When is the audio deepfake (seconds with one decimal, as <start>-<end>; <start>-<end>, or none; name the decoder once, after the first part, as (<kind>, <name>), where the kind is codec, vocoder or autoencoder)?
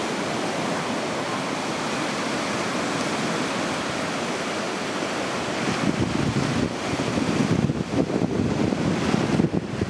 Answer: 7.4-8.3 (vocoder, BigVGAN v2)